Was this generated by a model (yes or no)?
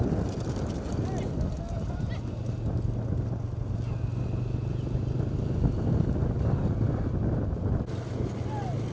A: no